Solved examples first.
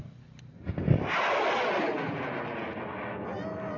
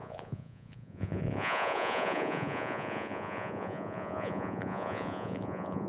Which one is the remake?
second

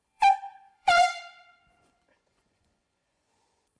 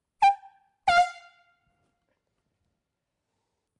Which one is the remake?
first